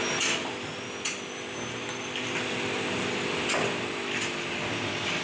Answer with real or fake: real